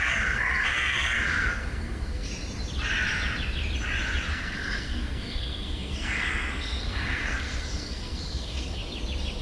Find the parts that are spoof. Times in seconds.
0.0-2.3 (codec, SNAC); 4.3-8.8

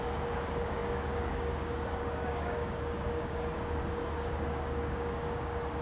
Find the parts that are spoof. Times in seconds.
0.0-5.8 (codec, DAC)

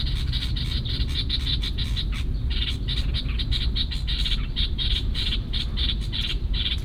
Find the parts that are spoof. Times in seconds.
4.8-5.6 (vocoder, BigVGAN v2)